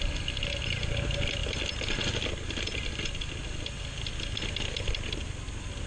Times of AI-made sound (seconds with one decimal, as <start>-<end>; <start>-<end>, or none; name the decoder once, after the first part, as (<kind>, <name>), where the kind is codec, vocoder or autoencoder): none